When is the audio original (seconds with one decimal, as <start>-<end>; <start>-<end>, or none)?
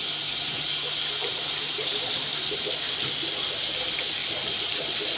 0.0-1.2; 2.6-4.2; 4.8-5.2